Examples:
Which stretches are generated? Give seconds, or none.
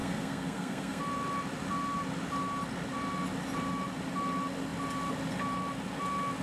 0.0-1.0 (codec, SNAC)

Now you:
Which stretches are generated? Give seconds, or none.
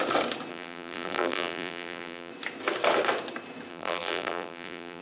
0.5-2.3 (vocoder, BigVGAN v2); 3.7-5.0